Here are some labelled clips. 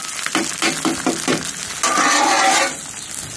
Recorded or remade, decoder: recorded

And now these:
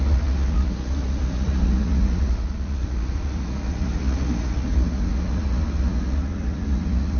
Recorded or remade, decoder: remade, vocoder, Vocos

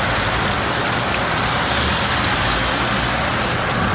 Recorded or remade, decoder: recorded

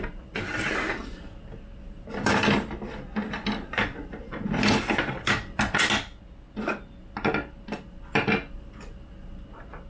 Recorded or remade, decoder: recorded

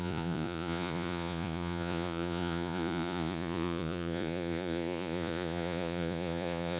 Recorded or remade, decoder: remade, vocoder, Vocos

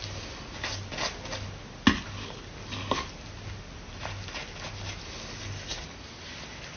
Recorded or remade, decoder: recorded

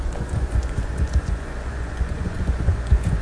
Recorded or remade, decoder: remade, vocoder, Vocos